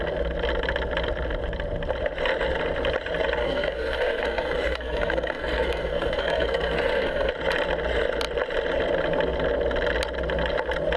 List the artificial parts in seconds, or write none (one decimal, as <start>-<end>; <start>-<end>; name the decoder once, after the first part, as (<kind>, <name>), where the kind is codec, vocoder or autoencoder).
3.4-7.3 (codec, SNAC)